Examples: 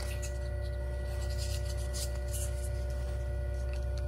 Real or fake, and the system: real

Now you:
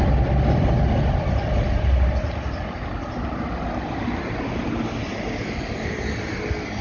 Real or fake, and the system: real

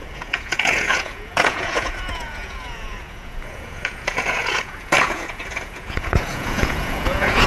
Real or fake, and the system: fake, vocoder, Vocos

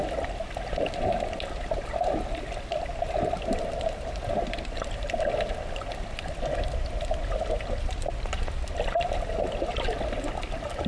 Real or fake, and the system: real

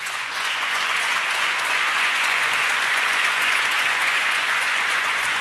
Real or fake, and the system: fake, vocoder, Vocos